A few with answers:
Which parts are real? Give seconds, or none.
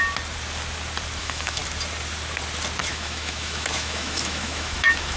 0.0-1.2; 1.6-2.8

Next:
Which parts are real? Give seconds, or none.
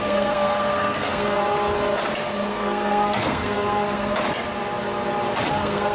1.4-2.5; 4.1-5.5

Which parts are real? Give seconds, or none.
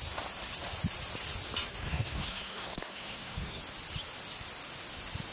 0.0-1.8; 3.6-5.3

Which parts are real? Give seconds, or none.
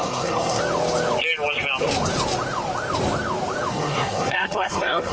0.6-3.7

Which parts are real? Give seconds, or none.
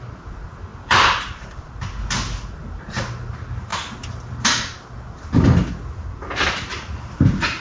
0.0-0.7; 1.7-3.7; 4.3-7.6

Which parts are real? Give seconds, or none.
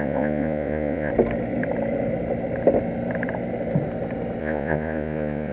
1.1-4.4